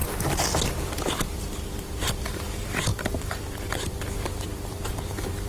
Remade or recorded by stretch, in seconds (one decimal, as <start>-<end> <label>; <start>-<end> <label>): 0.0-1.0 recorded; 1.0-5.5 remade